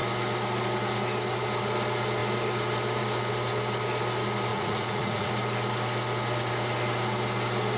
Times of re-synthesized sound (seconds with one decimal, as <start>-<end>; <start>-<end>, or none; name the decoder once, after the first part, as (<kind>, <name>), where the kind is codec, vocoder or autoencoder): 4.5-5.3 (vocoder, Vocos)